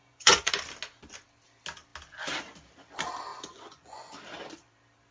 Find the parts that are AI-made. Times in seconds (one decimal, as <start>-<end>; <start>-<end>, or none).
0.0-0.5; 3.3-4.2